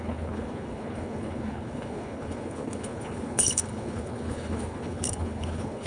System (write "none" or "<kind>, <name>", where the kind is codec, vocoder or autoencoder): codec, HILCodec